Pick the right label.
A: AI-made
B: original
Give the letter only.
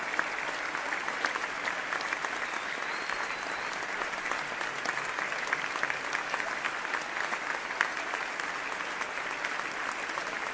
B